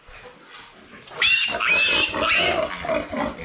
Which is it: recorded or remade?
recorded